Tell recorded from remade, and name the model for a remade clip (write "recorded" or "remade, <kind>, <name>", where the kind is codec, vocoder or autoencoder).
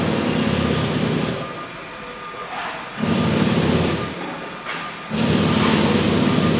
recorded